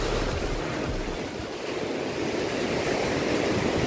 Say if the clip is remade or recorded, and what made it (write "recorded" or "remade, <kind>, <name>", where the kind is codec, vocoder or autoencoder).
remade, vocoder, BigVGAN v2